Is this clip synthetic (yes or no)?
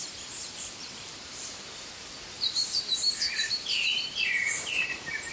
yes